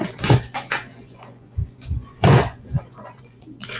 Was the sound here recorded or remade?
remade